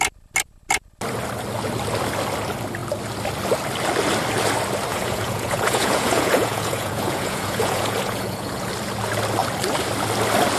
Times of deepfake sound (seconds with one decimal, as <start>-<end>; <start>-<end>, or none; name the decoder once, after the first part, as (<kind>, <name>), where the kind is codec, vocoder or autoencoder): 4.9-8.7 (vocoder, Vocos)